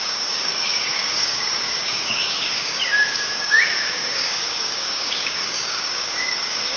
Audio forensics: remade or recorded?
remade